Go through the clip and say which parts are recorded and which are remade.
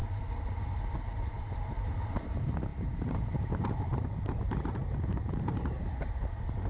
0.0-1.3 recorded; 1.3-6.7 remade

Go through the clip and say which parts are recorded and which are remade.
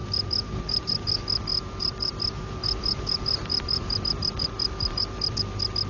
0.0-0.8 remade; 0.8-1.5 recorded; 1.5-2.1 remade; 2.1-2.6 recorded; 2.6-5.4 remade; 5.4-5.9 recorded